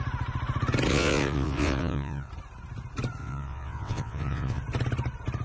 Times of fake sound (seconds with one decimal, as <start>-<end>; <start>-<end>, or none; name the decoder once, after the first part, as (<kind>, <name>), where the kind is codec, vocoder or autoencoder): 0.9-2.3 (vocoder, WaveNeXt); 3.2-4.6